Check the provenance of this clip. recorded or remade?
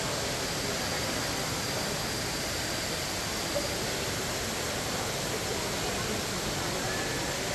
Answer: recorded